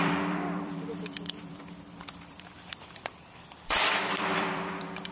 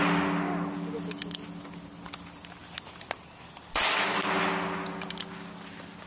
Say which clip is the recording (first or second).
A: second